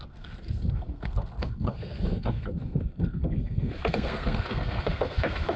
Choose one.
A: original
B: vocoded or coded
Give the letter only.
B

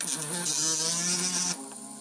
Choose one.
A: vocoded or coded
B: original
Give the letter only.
B